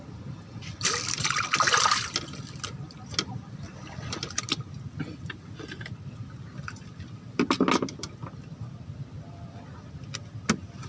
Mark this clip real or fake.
real